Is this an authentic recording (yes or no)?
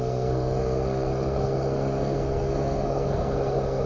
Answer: no